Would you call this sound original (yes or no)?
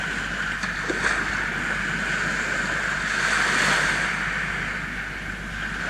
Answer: yes